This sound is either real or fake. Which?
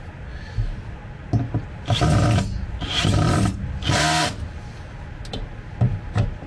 real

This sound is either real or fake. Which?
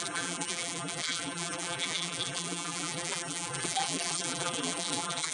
fake